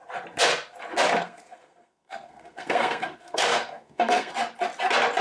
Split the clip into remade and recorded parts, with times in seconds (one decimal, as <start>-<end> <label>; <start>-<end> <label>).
0.0-1.2 recorded; 1.2-4.3 remade; 4.3-5.2 recorded